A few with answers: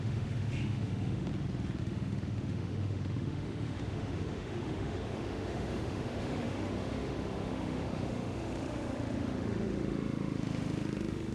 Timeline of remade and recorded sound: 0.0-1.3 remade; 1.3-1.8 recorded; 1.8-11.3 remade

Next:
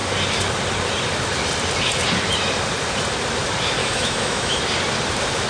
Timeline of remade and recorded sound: 0.0-3.8 recorded; 3.8-4.6 remade; 4.6-5.5 recorded

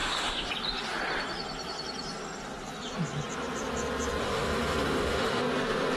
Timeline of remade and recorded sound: 0.0-0.5 remade; 0.5-4.2 recorded; 4.2-5.4 remade; 5.4-6.0 recorded

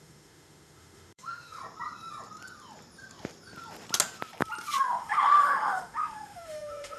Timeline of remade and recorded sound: 0.0-1.6 remade; 1.6-4.8 recorded; 4.8-7.0 remade

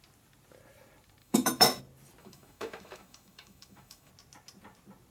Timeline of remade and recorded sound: 0.0-1.2 recorded; 1.2-1.8 remade; 1.8-2.2 recorded; 2.2-4.1 remade; 4.1-5.1 recorded

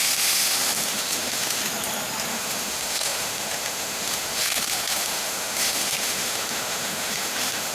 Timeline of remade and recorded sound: 0.0-1.6 remade; 1.6-2.3 recorded; 2.3-7.7 remade

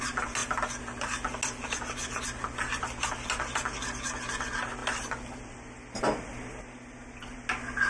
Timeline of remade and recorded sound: 0.0-7.9 recorded

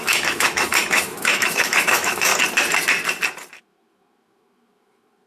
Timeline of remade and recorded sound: 0.0-2.3 remade; 2.3-3.6 recorded; 3.6-5.3 remade